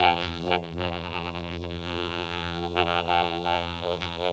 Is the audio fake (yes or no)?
yes